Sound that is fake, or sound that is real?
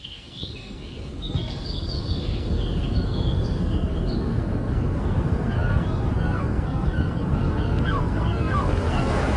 fake